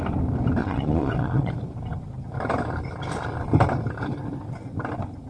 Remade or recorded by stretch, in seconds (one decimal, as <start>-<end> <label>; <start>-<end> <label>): 0.0-0.6 recorded; 0.6-1.5 remade; 1.5-5.3 recorded